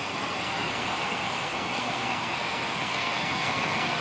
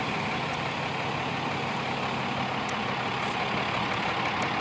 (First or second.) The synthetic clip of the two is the first